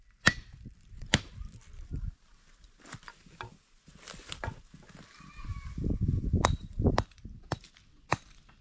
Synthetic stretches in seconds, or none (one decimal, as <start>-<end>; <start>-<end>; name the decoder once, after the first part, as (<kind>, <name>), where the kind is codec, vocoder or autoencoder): 6.6-7.2 (vocoder, BigVGAN v2)